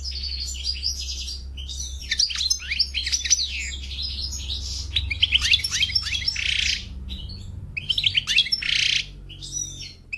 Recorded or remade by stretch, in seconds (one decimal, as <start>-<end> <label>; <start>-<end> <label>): 0.0-10.2 recorded